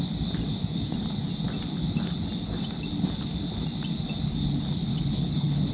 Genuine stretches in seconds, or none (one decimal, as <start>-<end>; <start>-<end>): 0.0-4.9